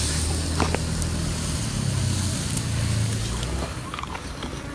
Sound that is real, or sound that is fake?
real